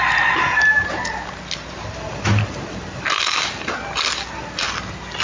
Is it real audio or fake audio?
real